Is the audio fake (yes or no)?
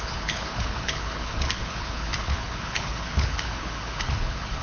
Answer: yes